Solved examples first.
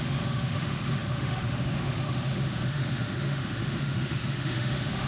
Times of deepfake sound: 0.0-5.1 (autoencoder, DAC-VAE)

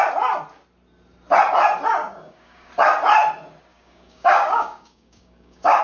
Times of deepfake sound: 2.0-2.7 (codec, DAC); 3.7-5.8

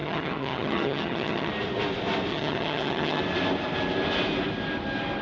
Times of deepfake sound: 0.0-1.5 (vocoder, HiFi-GAN); 2.3-3.2

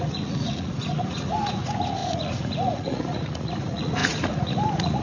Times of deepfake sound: 0.0-5.0 (vocoder, Vocos)

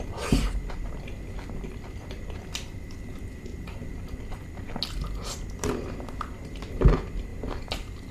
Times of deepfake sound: 3.5-4.2 (vocoder, BigVGAN v2); 7.3-8.1

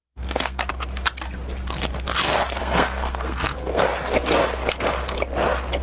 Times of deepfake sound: 0.0-0.7 (codec, SNAC); 2.6-3.9

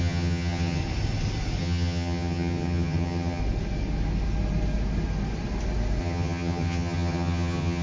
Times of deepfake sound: 0.0-0.8 (vocoder, HiFi-GAN); 1.6-3.4; 6.0-7.8